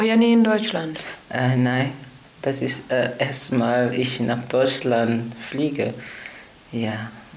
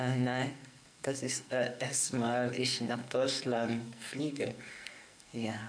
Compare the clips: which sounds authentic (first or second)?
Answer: first